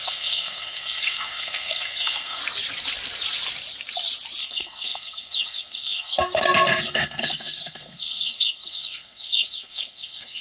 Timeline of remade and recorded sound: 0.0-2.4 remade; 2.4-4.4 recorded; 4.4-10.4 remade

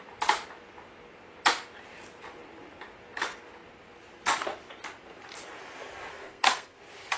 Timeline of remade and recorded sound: 0.0-6.1 recorded; 6.1-6.8 remade; 6.8-7.2 recorded

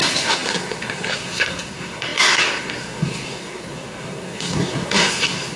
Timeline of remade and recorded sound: 0.0-5.6 remade

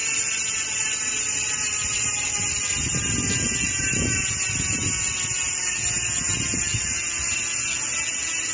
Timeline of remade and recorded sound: 0.0-8.5 recorded

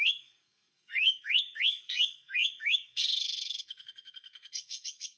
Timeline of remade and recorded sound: 0.0-5.2 remade

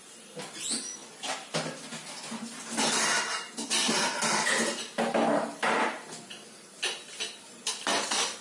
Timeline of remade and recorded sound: 0.0-8.4 recorded

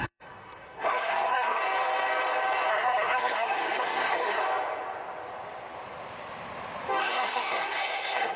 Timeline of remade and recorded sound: 0.0-1.6 remade; 1.6-2.7 recorded; 2.7-4.4 remade; 4.4-7.0 recorded; 7.0-8.4 remade

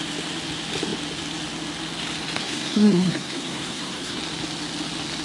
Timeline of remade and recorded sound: 0.0-2.4 recorded; 2.4-4.2 remade; 4.2-5.2 recorded